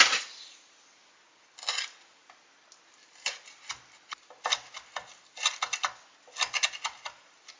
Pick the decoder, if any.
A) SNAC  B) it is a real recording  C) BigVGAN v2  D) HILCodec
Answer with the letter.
B